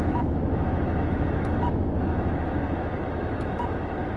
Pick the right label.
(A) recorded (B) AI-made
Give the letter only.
B